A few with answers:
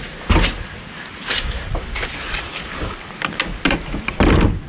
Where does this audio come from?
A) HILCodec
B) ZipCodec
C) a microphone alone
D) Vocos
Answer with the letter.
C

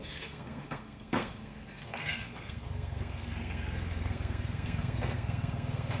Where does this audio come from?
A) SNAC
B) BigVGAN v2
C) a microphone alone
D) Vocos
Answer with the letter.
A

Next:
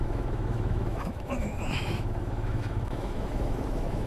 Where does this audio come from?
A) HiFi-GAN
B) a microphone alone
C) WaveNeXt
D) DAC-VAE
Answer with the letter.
D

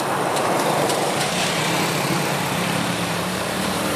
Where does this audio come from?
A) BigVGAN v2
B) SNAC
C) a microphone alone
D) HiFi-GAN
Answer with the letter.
A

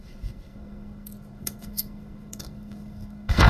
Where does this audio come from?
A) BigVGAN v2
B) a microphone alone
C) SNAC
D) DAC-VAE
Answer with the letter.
C